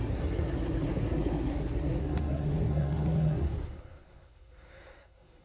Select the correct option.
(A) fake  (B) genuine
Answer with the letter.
A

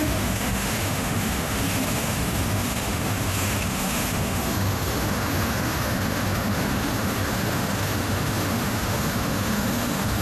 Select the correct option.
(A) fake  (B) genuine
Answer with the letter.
A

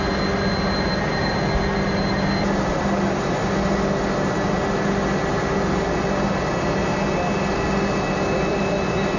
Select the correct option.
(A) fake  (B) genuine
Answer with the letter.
B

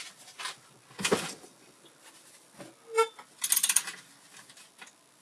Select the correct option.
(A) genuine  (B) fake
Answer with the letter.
A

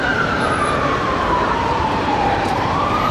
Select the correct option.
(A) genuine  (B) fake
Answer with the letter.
B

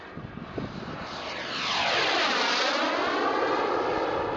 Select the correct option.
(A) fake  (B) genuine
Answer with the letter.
B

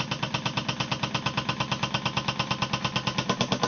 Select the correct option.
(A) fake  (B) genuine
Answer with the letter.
B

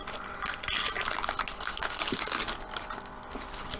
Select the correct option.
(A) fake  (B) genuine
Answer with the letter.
B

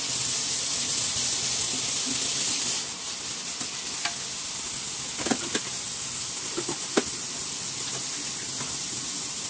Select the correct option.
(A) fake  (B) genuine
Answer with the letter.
B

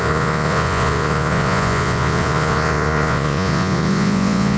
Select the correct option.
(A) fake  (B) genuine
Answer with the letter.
A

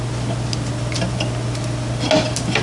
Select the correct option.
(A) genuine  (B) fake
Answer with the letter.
A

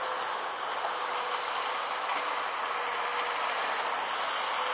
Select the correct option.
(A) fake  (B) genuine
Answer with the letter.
B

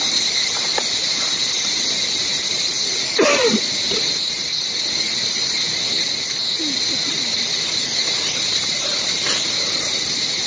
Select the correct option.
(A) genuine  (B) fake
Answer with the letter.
A